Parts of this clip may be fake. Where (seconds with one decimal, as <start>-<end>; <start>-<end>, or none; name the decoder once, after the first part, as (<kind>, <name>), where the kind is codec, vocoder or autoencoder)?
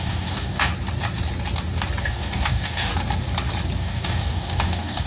0.0-0.7 (codec, DAC); 2.0-2.9; 3.8-5.1